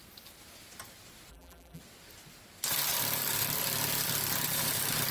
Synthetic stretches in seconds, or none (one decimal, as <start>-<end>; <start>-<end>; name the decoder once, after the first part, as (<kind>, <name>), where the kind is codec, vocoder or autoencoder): 1.3-1.8 (vocoder, BigVGAN v2)